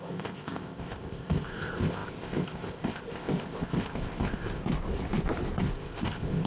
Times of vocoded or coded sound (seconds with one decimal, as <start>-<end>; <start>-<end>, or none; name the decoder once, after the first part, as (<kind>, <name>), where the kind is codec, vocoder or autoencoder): 0.0-4.6 (codec, ZipCodec); 5.6-6.5